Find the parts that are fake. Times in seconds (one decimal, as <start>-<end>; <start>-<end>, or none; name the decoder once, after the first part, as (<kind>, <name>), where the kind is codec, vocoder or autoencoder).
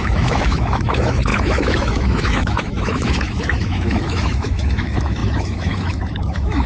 0.0-6.7 (autoencoder, DAC-VAE)